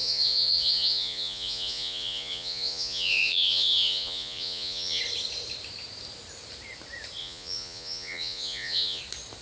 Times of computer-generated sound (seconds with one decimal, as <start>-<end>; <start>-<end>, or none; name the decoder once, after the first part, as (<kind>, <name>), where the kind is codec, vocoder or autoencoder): 0.0-5.0 (vocoder, Vocos); 7.2-9.0